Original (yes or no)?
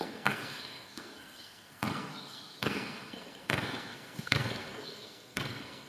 no